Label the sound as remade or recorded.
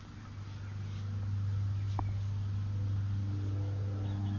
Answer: recorded